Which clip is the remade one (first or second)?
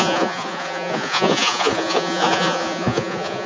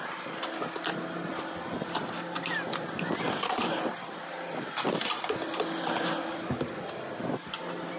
first